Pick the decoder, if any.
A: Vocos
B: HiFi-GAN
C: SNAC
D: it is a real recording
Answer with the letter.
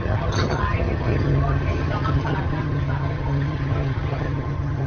B